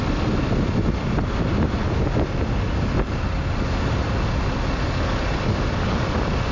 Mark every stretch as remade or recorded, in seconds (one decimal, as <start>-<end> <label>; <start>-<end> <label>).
0.0-6.5 recorded